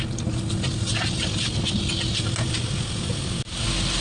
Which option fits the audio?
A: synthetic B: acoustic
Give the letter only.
B